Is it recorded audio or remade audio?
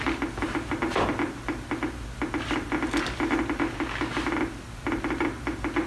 recorded